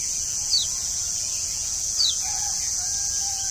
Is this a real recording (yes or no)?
no